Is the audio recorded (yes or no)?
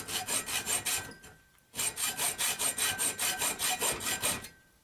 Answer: no